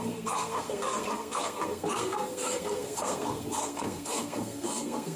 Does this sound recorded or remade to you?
remade